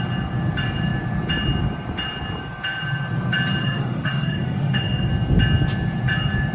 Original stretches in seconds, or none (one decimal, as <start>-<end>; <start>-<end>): 0.0-3.6; 5.1-6.5